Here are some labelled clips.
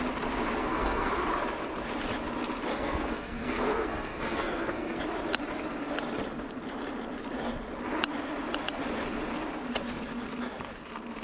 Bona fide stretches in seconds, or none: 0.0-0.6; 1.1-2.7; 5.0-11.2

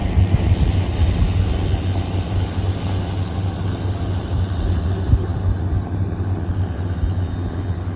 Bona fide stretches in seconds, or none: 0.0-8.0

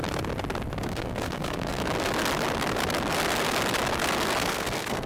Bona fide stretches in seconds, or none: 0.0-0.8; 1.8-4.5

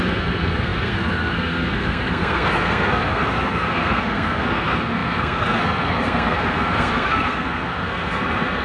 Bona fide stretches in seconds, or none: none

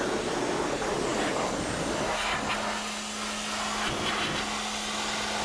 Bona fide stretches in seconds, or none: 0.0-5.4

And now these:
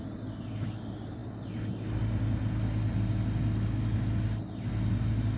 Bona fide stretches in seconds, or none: 0.0-5.4